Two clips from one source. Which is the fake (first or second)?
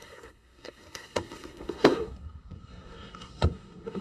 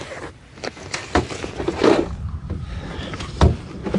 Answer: first